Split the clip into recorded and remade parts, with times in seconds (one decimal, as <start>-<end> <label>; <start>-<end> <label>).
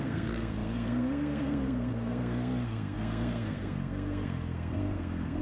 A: 0.0-5.4 remade